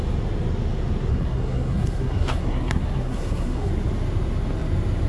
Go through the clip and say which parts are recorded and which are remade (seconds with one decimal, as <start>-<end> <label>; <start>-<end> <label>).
0.0-1.1 recorded; 1.1-3.7 remade; 3.7-5.1 recorded